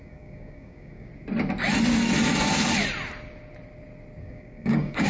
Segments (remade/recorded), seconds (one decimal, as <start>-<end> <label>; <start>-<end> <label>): 0.0-1.1 remade; 1.1-4.2 recorded; 4.2-5.1 remade